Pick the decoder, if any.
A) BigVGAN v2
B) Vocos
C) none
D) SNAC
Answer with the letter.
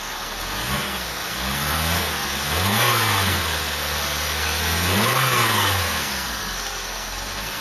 D